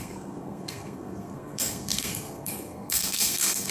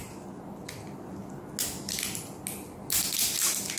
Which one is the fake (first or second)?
first